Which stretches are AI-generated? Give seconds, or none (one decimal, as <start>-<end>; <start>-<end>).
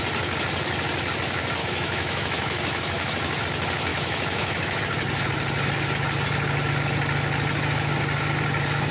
1.6-3.4; 3.9-4.8